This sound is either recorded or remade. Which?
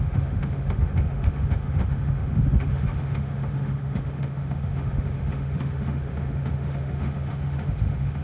remade